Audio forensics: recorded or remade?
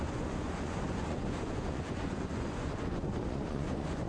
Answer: remade